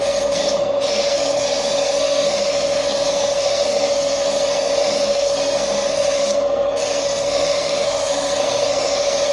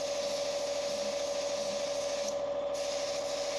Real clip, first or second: second